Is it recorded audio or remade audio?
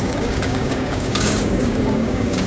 remade